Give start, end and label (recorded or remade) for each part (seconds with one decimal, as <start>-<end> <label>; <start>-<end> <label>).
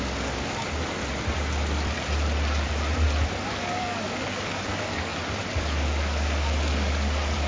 0.0-1.0 remade; 1.0-3.5 recorded; 3.5-5.1 remade; 5.1-5.6 recorded; 5.6-7.5 remade